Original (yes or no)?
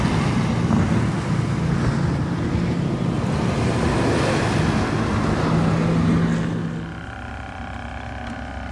yes